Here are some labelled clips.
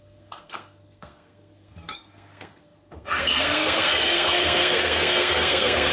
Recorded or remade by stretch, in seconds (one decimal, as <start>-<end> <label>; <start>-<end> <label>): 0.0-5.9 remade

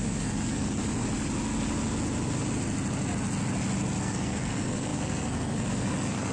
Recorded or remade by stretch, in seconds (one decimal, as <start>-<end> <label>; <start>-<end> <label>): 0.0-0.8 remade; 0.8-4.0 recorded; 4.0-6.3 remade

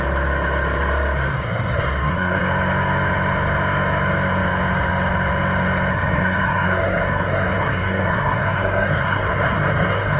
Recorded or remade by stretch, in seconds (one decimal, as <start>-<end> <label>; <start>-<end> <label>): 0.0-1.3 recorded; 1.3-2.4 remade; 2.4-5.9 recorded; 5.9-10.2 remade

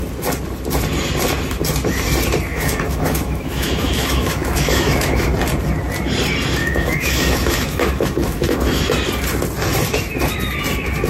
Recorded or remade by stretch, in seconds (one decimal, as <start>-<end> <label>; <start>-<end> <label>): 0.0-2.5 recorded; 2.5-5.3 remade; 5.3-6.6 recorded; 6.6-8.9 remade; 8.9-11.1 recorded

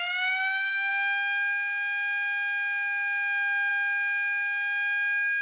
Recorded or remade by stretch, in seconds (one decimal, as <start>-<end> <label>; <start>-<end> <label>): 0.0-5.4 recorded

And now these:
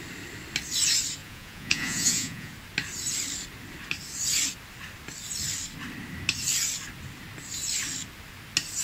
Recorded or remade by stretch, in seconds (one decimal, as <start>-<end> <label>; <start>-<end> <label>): 0.0-1.2 recorded; 1.2-2.5 remade; 2.5-8.8 recorded